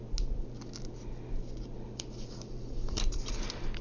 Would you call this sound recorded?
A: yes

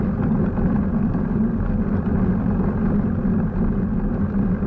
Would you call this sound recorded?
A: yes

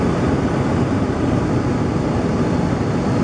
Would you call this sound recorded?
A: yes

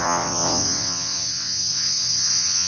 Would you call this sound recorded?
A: no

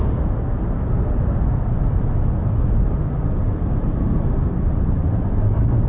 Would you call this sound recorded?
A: yes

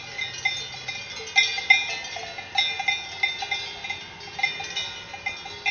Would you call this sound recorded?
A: yes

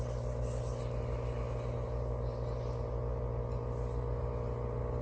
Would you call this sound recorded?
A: yes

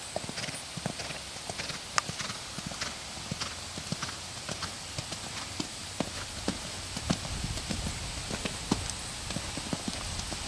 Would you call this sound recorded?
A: yes